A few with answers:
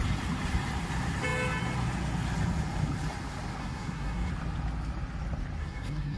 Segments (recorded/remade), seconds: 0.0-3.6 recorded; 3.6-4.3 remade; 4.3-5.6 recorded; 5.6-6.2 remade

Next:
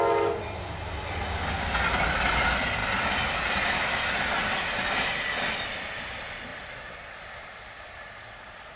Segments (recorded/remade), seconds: 0.0-8.8 recorded

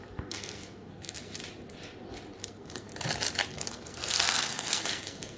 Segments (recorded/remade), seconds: 0.0-1.4 remade; 1.4-2.4 recorded; 2.4-2.9 remade; 2.9-3.5 recorded; 3.5-5.4 remade

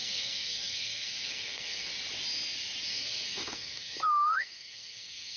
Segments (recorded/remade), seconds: 0.0-1.9 remade; 1.9-2.9 recorded; 2.9-5.4 remade

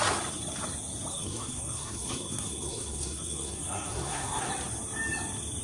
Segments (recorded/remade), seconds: 0.0-1.1 recorded; 1.1-4.5 remade; 4.5-5.6 recorded

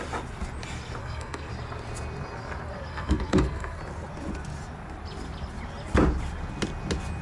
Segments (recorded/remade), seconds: 0.0-1.0 recorded; 1.0-1.5 remade; 1.5-2.9 recorded; 2.9-3.8 remade; 3.8-7.2 recorded

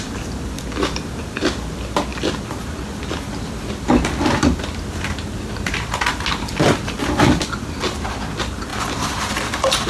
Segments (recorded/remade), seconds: 0.0-9.9 recorded